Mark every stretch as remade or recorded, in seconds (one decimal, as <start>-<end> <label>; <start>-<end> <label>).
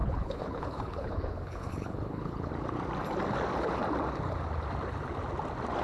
0.0-2.5 remade; 2.5-5.8 recorded